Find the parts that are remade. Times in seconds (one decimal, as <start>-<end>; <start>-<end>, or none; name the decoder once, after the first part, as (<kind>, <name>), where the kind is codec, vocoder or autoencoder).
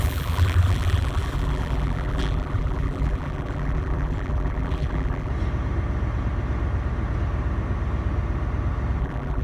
0.0-5.3 (vocoder, BigVGAN v2); 9.0-9.4